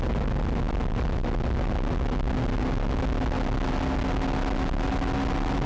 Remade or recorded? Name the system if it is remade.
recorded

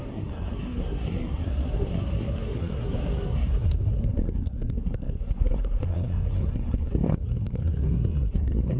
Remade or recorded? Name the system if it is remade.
remade, codec, SNAC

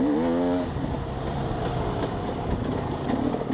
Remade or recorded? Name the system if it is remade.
recorded